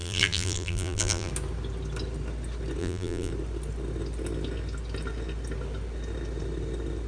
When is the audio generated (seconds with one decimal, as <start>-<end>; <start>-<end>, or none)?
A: 0.0-1.3; 2.8-3.3